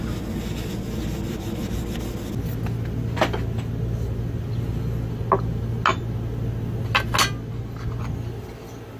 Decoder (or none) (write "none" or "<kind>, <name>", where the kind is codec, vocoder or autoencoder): none